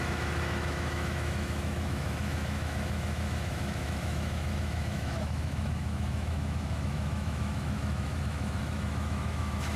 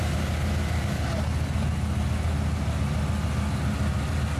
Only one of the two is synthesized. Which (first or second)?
first